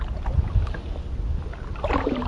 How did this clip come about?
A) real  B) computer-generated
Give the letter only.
A